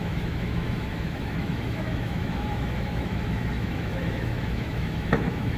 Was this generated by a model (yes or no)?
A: yes